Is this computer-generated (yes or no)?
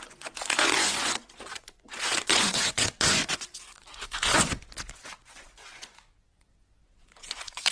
yes